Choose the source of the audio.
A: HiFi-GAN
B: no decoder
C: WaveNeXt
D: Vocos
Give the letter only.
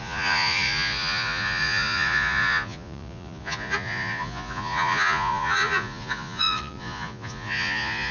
D